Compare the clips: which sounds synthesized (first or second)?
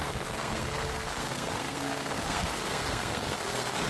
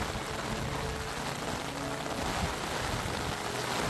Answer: first